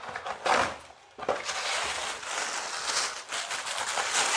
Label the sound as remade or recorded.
recorded